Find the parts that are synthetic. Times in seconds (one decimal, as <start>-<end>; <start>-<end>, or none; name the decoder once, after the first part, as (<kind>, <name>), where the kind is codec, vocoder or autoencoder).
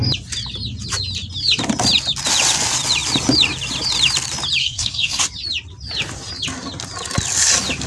4.6-5.2 (codec, SNAC)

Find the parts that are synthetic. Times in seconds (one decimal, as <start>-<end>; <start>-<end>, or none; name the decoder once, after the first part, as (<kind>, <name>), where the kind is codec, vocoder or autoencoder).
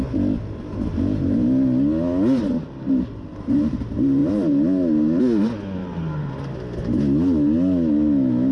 5.8-6.3 (vocoder, BigVGAN v2)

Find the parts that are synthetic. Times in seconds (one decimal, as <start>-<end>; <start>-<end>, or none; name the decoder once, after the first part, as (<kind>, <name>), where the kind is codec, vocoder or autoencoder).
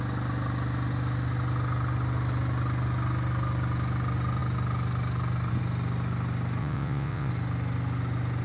6.6-7.3 (vocoder, WaveNeXt)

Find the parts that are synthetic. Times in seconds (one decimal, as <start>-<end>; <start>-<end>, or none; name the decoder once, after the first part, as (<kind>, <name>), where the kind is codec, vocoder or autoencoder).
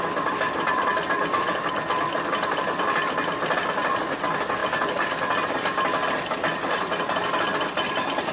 none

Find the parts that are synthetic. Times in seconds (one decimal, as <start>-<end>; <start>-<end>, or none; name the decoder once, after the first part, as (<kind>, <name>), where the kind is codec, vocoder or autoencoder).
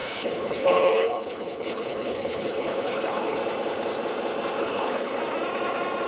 0.0-3.4 (codec, HILCodec); 4.6-5.2